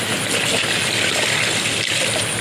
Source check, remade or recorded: recorded